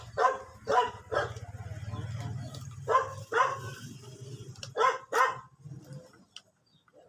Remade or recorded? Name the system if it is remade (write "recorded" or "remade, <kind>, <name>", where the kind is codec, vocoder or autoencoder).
recorded